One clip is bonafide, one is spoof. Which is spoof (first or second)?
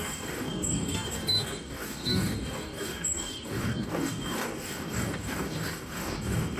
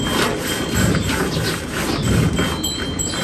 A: first